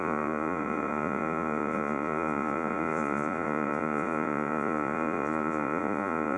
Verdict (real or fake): fake